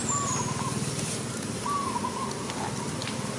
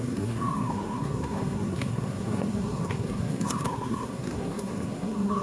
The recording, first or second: first